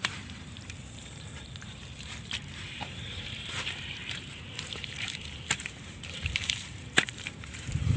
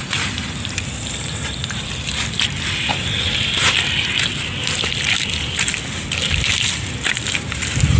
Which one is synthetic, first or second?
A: first